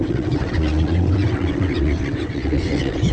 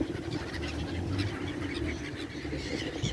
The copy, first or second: first